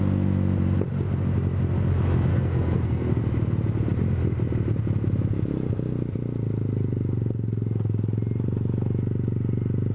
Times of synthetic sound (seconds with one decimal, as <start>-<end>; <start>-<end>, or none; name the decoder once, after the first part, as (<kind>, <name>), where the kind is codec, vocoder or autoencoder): 2.3-3.2 (codec, SNAC)